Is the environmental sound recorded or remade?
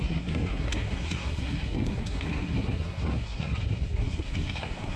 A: remade